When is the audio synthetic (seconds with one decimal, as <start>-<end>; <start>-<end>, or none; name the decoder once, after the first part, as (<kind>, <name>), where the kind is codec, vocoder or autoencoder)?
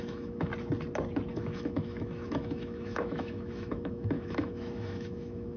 0.0-0.5 (autoencoder, DAC-VAE); 1.3-5.6